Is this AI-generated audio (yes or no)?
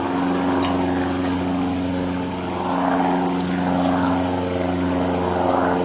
no